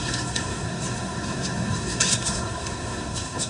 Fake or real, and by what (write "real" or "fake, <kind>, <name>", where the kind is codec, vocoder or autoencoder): fake, codec, SNAC